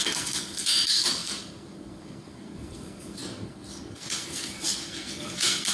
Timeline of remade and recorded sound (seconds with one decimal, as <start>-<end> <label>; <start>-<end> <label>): 0.0-5.7 remade